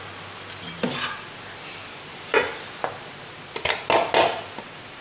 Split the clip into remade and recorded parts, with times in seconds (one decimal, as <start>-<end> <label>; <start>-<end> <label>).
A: 0.0-5.0 recorded